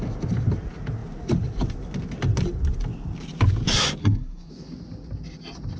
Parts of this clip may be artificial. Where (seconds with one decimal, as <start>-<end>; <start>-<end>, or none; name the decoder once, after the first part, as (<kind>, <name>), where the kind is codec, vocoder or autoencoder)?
4.0-4.5 (codec, SNAC)